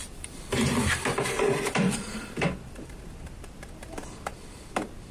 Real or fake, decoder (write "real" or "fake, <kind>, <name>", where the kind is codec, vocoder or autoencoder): fake, vocoder, BigVGAN v2